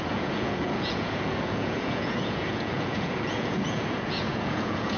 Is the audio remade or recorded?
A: remade